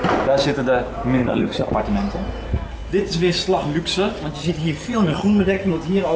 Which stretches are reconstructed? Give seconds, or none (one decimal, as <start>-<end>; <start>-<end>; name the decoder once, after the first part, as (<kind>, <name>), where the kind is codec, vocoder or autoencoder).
1.2-1.7 (vocoder, HiFi-GAN); 4.4-5.7